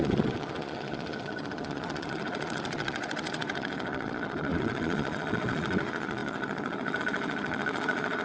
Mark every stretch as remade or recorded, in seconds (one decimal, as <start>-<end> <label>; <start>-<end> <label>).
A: 0.0-8.2 remade